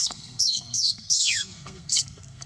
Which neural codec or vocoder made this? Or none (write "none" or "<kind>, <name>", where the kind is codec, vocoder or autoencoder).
codec, SNAC